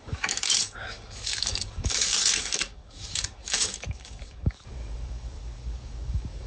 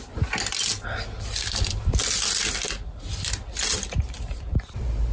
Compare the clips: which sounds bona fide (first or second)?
second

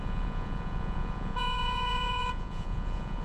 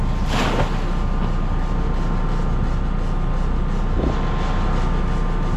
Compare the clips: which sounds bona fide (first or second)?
second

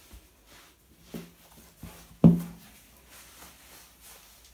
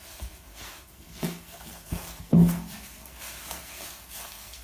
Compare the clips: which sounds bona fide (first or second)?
first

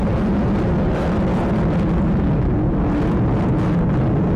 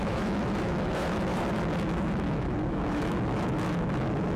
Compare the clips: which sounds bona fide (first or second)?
first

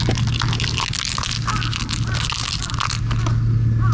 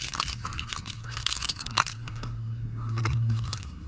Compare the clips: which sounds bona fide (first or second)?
first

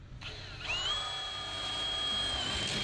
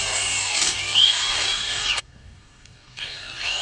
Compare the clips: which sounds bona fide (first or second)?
first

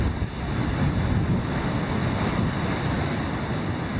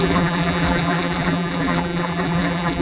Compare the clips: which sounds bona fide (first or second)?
first